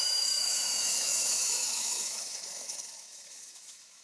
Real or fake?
fake